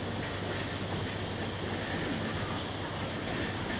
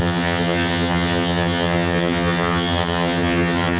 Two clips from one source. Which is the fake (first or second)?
second